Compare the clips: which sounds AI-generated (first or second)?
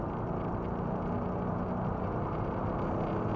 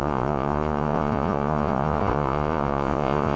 second